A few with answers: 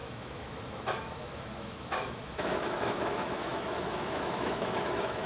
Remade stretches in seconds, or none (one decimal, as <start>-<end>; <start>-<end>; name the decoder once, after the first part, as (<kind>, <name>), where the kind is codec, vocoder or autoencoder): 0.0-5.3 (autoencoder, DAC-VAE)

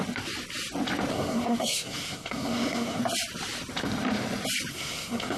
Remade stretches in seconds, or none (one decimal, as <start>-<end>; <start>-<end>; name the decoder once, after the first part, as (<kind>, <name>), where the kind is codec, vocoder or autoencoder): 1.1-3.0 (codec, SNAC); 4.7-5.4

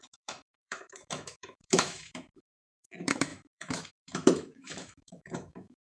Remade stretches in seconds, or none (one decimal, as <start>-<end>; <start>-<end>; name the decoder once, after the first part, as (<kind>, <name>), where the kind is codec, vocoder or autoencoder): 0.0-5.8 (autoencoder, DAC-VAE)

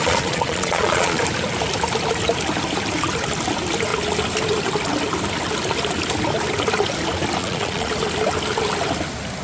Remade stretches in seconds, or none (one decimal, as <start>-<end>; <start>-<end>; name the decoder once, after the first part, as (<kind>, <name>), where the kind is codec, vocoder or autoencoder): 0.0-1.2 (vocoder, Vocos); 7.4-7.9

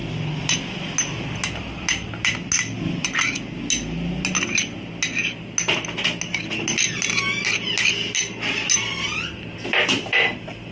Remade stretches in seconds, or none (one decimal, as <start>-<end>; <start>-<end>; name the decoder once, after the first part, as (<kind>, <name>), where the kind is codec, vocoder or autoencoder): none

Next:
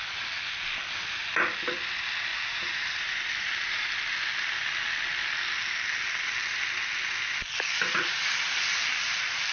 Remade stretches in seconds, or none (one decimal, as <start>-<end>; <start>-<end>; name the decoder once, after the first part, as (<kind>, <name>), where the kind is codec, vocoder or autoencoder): 2.3-3.3 (vocoder, BigVGAN v2)

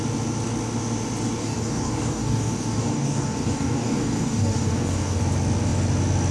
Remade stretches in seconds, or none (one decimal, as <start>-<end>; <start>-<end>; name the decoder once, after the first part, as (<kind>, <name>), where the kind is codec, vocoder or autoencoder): 1.4-5.2 (codec, DAC)

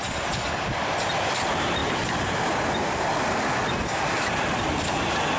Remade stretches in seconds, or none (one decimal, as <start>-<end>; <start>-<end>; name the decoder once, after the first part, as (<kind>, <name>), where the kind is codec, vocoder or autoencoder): none